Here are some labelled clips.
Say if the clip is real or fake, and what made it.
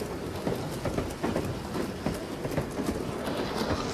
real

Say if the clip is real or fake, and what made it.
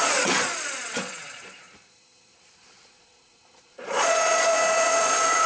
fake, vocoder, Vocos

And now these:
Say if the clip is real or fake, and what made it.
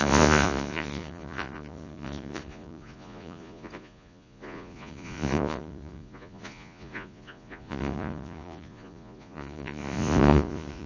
fake, vocoder, Vocos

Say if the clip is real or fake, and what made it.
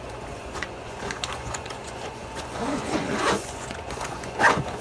fake, vocoder, Vocos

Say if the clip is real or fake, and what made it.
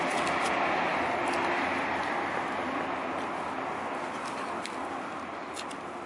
real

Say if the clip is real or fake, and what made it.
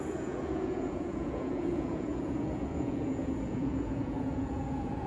fake, vocoder, Vocos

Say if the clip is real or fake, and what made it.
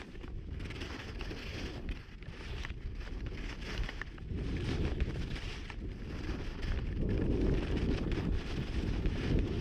real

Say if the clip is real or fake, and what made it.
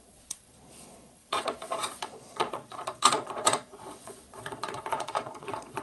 fake, vocoder, Vocos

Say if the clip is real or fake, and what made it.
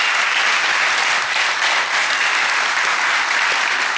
real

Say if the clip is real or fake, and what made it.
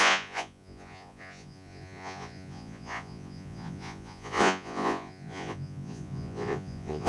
fake, vocoder, Vocos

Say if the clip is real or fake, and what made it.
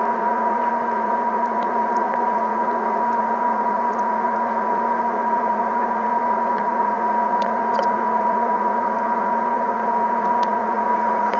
fake, vocoder, Vocos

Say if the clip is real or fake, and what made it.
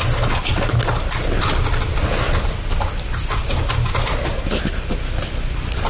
real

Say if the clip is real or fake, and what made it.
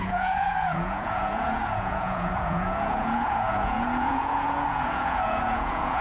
fake, vocoder, Vocos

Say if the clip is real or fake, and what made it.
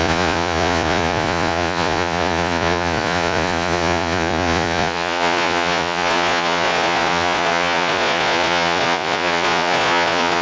fake, vocoder, Vocos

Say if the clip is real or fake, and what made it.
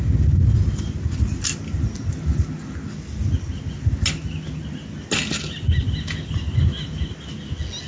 real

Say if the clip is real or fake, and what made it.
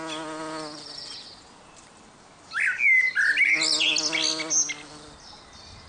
real